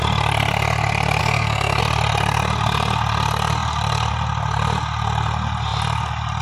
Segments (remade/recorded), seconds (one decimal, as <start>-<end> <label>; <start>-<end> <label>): 0.0-1.2 recorded; 1.2-1.8 remade; 1.8-6.4 recorded